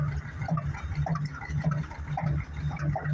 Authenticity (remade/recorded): recorded